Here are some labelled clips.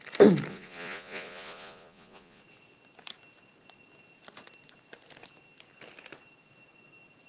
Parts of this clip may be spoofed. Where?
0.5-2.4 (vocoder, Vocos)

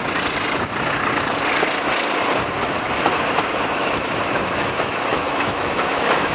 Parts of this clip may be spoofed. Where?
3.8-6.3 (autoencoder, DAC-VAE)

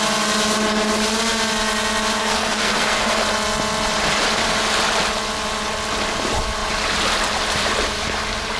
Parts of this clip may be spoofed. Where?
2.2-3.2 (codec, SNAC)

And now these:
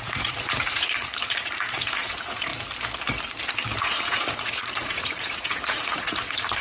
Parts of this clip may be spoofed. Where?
0.0-2.5 (vocoder, Vocos); 3.8-6.6

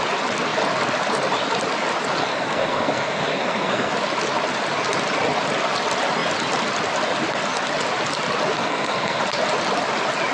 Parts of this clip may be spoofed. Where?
2.2-3.9 (codec, SNAC); 8.6-9.2

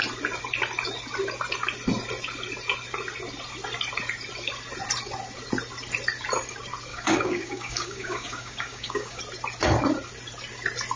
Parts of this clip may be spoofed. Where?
6.9-9.2 (codec, DAC)